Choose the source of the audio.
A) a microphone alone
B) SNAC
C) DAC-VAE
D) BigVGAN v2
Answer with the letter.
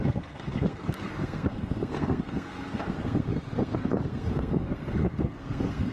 B